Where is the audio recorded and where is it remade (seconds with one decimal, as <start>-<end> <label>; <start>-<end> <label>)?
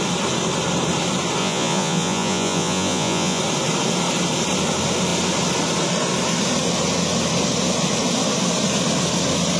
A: 0.0-1.4 recorded; 1.4-3.4 remade; 3.4-9.6 recorded